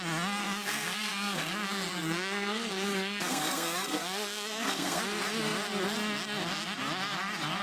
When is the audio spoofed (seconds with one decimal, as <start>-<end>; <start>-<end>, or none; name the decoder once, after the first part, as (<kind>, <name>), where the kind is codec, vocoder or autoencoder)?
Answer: 0.4-5.0 (codec, SNAC)